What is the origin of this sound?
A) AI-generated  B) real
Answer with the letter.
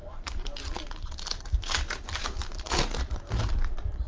A